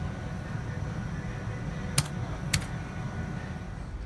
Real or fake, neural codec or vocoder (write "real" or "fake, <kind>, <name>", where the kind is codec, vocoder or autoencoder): real